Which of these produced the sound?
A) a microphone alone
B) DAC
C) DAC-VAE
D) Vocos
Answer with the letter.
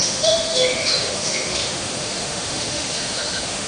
C